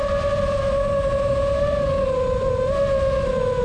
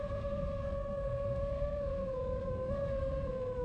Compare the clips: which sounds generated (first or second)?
second